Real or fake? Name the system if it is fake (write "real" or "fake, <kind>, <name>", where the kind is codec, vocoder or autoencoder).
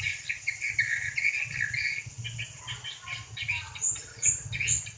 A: real